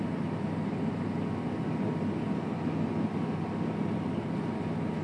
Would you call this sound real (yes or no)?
yes